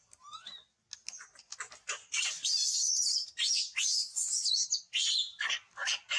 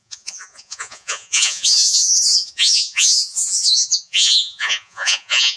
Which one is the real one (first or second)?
first